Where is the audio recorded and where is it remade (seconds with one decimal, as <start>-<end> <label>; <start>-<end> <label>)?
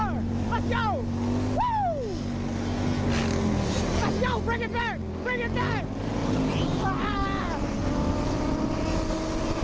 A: 0.0-0.7 remade; 0.7-6.2 recorded; 6.2-7.4 remade; 7.4-9.6 recorded